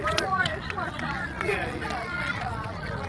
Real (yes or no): no